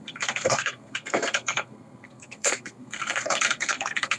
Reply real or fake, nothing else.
fake